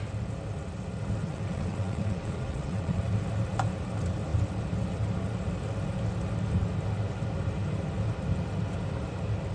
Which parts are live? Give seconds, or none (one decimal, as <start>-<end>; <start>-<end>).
0.0-1.2; 3.0-9.5